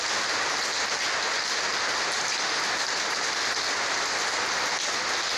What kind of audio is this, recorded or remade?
recorded